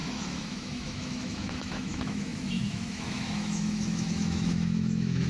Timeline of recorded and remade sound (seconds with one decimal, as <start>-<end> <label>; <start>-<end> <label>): 0.0-5.3 remade